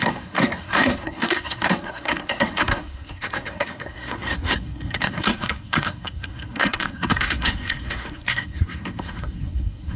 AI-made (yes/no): yes